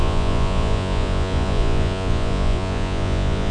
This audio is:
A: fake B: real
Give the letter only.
A